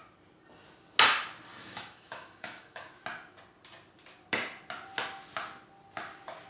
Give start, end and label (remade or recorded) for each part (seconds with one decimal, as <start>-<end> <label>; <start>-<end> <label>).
0.0-1.5 recorded; 1.5-2.9 remade; 2.9-6.5 recorded